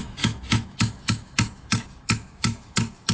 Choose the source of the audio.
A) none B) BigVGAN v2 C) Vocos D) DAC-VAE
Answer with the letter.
D